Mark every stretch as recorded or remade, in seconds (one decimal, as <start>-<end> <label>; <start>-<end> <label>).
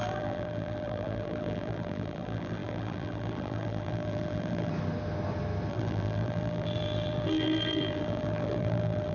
0.0-4.7 remade; 4.7-5.7 recorded; 5.7-9.1 remade